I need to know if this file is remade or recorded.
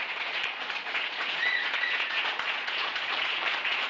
remade